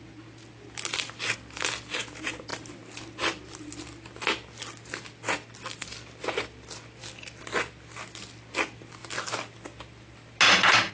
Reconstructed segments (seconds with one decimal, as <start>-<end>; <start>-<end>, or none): none